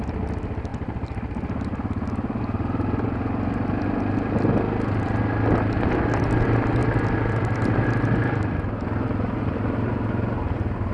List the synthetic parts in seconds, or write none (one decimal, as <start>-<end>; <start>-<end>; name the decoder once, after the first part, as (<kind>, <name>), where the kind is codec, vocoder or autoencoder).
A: none